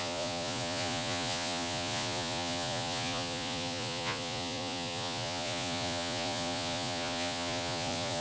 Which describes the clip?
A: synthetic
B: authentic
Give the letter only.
A